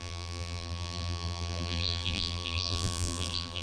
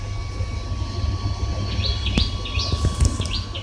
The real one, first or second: second